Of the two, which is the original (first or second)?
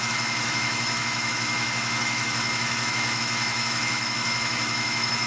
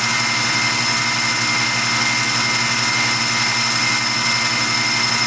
second